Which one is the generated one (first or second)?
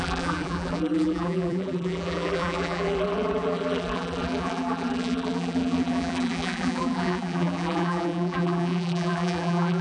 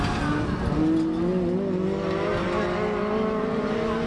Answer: first